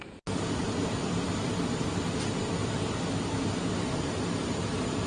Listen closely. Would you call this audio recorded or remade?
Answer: recorded